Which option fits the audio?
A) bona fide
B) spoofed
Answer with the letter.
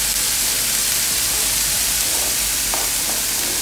B